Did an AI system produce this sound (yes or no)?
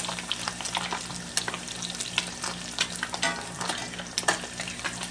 no